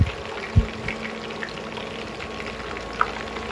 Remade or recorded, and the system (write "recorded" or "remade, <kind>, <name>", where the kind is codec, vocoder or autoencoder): recorded